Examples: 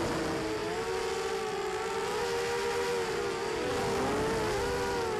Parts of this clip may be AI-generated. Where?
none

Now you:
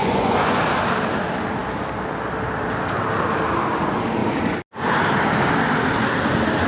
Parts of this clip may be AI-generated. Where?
0.0-0.6 (vocoder, Vocos)

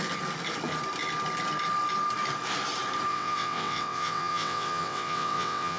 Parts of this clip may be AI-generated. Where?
3.1-5.8 (vocoder, WaveNeXt)

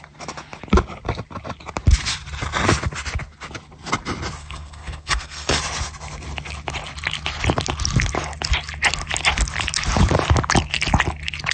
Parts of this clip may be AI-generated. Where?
4.4-5.6 (codec, SNAC)